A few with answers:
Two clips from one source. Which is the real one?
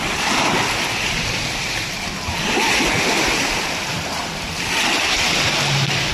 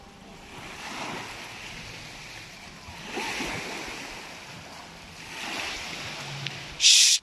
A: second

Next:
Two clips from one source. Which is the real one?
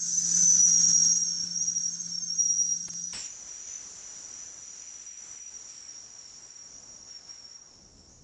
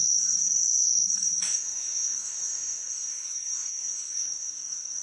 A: first